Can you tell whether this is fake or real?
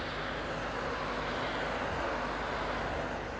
real